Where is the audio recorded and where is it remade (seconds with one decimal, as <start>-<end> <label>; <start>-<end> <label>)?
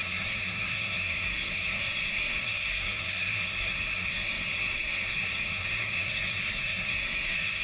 0.0-7.6 remade